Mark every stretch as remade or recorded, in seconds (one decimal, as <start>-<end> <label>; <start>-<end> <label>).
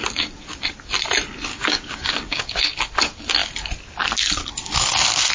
0.0-1.5 recorded; 1.5-2.8 remade; 2.8-5.3 recorded